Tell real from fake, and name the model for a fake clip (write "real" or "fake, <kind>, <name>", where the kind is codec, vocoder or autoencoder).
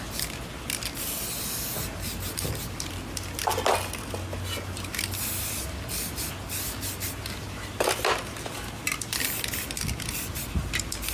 real